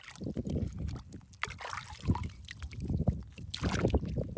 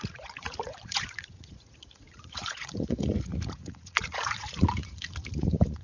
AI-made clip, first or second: second